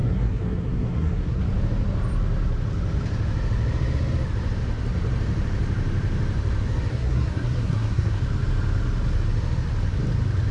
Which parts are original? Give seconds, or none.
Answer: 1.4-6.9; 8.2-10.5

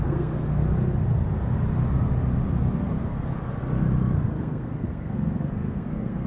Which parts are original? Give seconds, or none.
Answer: 0.6-4.4

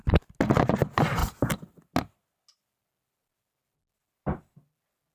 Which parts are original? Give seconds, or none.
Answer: 0.0-5.1

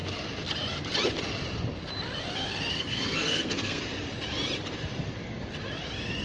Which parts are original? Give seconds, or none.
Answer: 0.0-2.7; 3.8-6.2

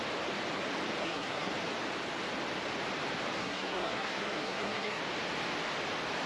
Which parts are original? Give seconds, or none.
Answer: 0.0-1.0; 1.5-3.4; 5.0-6.3

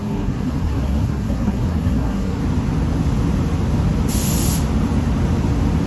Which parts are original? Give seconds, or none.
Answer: 2.4-5.9

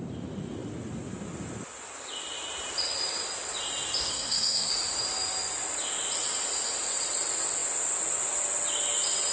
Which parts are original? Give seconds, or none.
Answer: 0.0-4.1; 4.7-9.3